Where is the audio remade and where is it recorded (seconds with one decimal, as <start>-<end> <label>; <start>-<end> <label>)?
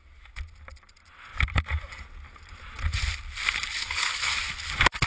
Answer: 0.0-3.8 recorded; 3.8-4.3 remade; 4.3-5.1 recorded